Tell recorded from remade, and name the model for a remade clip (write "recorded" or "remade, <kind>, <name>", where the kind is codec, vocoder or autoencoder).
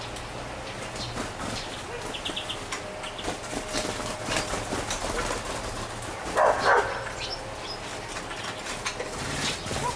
recorded